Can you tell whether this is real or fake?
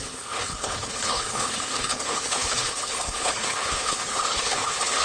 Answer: fake